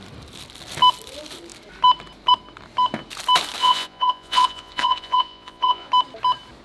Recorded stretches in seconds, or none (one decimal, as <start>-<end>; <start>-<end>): 0.0-3.6; 5.9-6.6